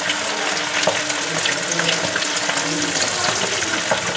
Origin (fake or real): real